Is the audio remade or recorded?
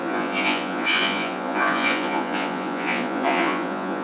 remade